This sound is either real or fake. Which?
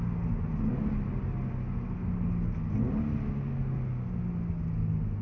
real